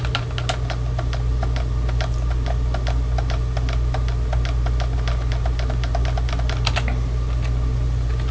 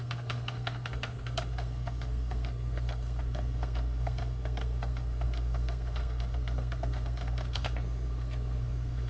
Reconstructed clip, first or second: second